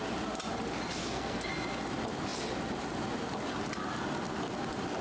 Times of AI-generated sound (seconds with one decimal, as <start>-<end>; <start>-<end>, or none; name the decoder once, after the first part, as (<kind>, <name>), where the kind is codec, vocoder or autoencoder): 1.0-1.5 (codec, SNAC)